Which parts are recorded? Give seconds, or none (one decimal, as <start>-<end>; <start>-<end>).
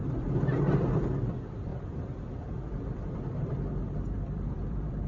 0.8-1.7